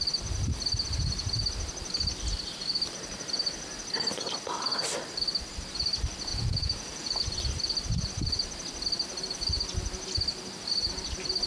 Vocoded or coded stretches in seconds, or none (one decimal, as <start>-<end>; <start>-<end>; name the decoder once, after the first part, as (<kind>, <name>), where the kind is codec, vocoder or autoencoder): 6.3-7.2 (vocoder, Vocos)